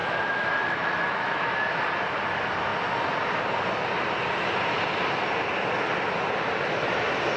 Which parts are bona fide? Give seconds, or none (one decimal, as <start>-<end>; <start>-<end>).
1.5-7.4